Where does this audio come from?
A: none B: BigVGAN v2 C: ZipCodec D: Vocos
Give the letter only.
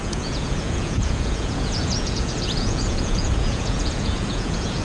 D